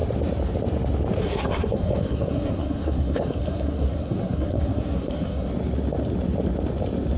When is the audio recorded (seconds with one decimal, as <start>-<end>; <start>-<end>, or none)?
0.0-1.2; 5.5-7.2